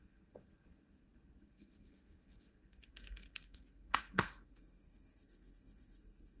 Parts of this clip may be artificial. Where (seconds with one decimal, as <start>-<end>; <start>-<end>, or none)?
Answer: 0.0-6.4